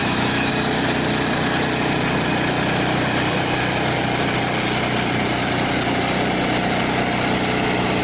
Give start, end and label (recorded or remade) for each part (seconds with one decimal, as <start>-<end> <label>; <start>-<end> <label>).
0.0-0.5 remade; 0.5-8.0 recorded